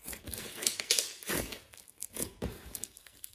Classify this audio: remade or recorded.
remade